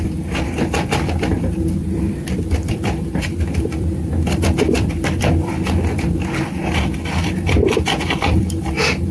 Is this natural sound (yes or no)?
no